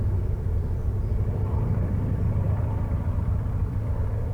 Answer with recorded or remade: remade